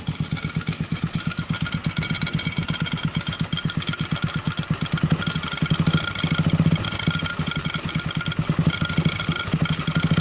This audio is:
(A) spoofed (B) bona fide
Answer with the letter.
B